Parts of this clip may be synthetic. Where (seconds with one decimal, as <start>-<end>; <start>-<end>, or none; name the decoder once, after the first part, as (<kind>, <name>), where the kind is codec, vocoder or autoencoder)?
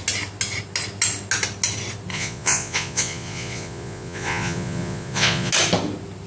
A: 2.1-5.5 (vocoder, Vocos)